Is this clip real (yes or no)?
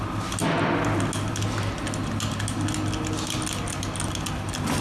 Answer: yes